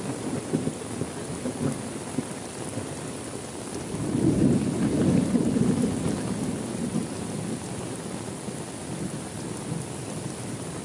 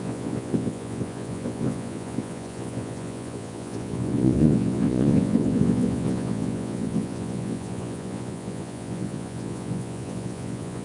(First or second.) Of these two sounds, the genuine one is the first